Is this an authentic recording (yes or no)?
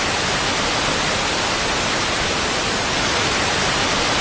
yes